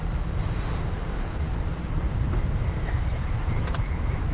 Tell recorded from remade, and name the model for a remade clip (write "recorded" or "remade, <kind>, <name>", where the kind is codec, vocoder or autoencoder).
remade, vocoder, BigVGAN v2